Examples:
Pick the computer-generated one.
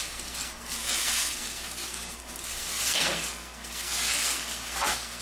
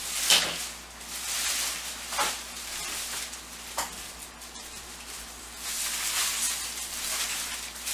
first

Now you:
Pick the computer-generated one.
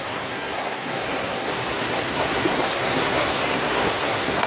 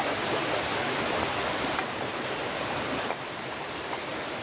first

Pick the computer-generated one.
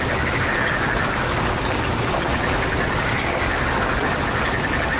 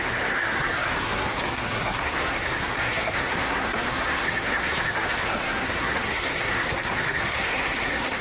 second